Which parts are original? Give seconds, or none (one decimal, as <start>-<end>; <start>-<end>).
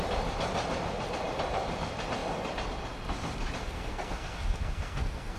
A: 0.0-3.6